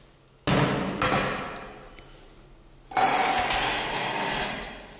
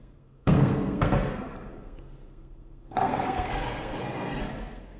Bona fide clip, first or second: first